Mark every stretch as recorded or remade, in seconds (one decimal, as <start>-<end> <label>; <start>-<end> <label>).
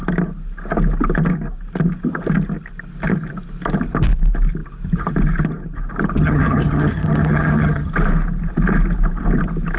0.0-6.2 recorded; 6.2-7.9 remade; 7.9-9.8 recorded